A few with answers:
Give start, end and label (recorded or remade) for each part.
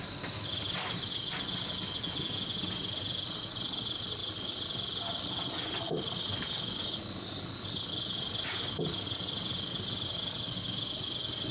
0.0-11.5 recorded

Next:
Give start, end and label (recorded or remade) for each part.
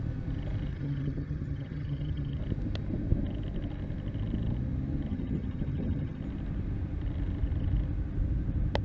0.0-0.7 recorded; 0.7-2.4 remade; 2.4-5.1 recorded; 5.1-6.2 remade; 6.2-8.8 recorded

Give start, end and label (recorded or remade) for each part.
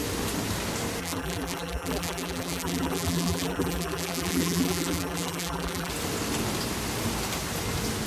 0.0-1.0 recorded; 1.0-5.9 remade; 5.9-8.1 recorded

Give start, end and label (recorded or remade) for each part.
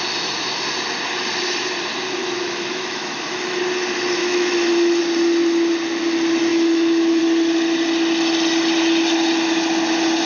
0.0-2.2 recorded; 2.2-3.6 remade; 3.6-4.2 recorded; 4.2-5.0 remade; 5.0-6.5 recorded; 6.5-7.2 remade; 7.2-10.3 recorded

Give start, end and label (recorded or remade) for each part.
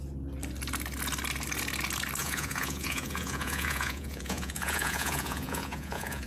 0.0-2.2 recorded; 2.2-6.3 remade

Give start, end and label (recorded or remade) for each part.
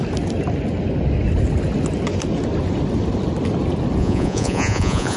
0.0-4.0 recorded; 4.0-5.2 remade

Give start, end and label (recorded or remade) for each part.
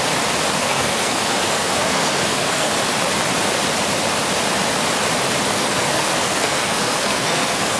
0.0-0.6 recorded; 0.6-2.7 remade; 2.7-5.5 recorded; 5.5-7.8 remade